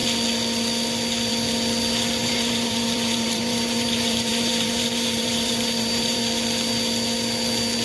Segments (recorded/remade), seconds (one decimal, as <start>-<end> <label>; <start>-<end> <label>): 0.0-2.2 recorded; 2.2-6.2 remade; 6.2-7.8 recorded